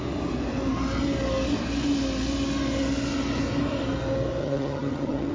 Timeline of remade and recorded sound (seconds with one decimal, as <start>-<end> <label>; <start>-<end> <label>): 0.0-4.4 recorded; 4.4-5.3 remade